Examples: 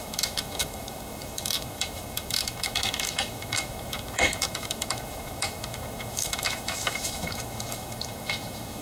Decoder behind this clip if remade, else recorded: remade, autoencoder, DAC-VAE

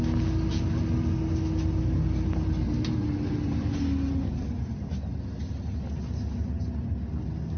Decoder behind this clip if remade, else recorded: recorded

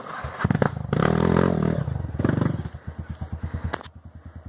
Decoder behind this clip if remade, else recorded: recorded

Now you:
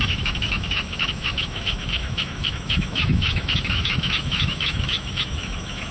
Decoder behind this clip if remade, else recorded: remade, autoencoder, DAC-VAE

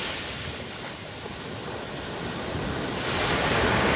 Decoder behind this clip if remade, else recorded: recorded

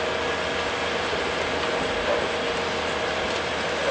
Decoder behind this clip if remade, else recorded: recorded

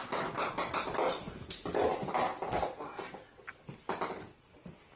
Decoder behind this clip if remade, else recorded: recorded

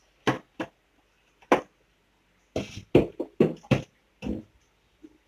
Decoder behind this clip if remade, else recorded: recorded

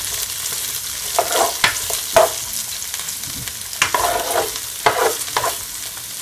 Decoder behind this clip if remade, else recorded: recorded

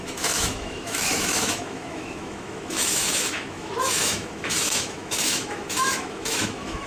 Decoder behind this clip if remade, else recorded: remade, autoencoder, DAC-VAE